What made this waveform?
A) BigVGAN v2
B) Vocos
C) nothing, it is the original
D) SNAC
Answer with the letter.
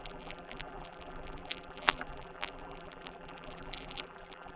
A